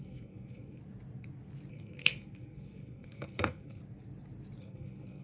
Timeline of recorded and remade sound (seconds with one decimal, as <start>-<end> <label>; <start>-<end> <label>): 0.0-0.8 remade; 0.8-1.7 recorded; 1.7-3.8 remade; 3.8-4.6 recorded; 4.6-5.2 remade